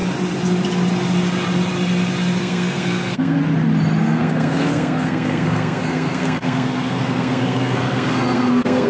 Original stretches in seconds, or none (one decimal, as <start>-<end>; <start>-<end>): 0.0-2.4; 3.4-4.0